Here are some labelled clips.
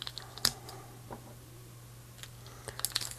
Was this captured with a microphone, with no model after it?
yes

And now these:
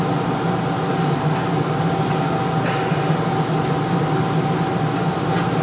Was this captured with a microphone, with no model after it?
yes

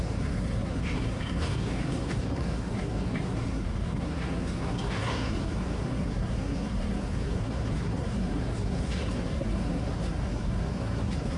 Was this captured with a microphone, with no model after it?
no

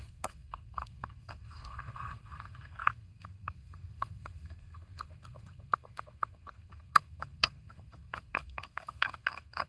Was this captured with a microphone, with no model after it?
no